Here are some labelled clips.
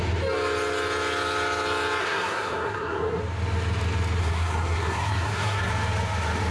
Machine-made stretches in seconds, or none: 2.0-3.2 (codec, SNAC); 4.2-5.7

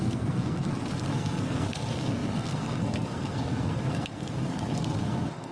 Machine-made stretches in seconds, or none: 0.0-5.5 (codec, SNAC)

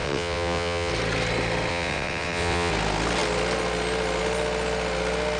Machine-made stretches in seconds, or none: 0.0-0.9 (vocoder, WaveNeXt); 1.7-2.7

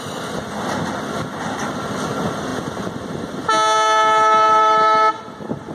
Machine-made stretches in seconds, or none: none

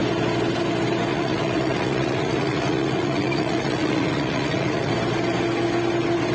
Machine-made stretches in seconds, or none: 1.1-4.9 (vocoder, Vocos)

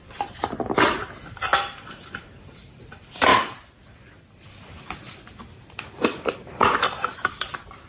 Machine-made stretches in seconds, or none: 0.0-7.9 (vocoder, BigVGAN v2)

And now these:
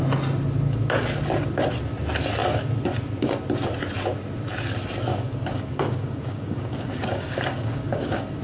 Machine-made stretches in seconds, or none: 5.1-8.4 (codec, DAC)